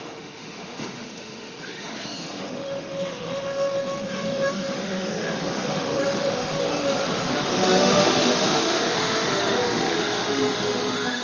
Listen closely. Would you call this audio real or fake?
fake